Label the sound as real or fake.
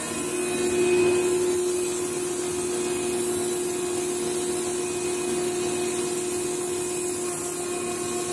real